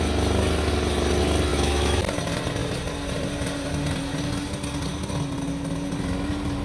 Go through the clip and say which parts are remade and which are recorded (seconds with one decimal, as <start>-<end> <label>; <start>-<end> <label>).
0.0-1.5 recorded; 1.5-2.0 remade; 2.0-6.6 recorded